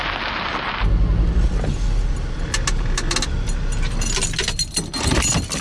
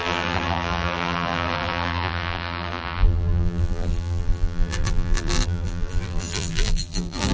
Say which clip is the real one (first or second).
first